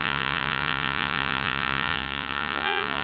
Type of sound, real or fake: fake